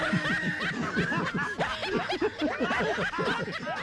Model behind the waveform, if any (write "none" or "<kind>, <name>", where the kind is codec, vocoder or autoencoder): none